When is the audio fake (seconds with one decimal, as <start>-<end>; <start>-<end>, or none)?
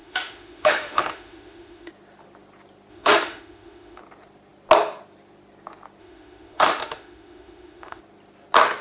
0.0-1.9; 2.9-4.0; 6.0-8.0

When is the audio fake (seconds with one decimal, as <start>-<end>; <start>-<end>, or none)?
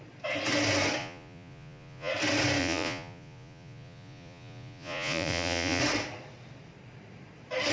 1.0-2.1; 2.6-5.8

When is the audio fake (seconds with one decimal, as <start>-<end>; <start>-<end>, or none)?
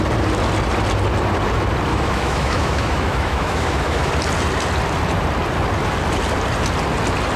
1.9-4.1